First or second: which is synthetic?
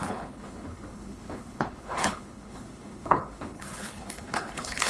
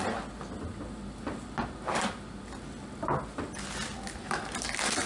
first